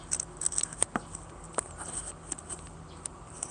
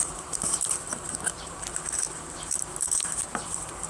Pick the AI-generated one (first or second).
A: second